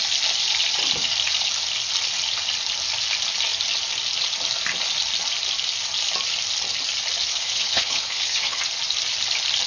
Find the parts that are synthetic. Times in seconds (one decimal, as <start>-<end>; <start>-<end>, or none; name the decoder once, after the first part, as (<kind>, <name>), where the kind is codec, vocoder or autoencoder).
7.3-8.6 (codec, HILCodec)